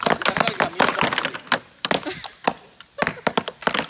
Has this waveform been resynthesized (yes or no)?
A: no